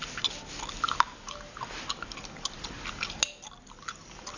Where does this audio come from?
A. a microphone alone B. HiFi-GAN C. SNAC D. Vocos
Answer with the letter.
A